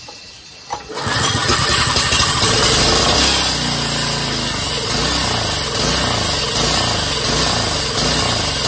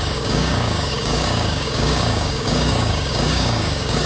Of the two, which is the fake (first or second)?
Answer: second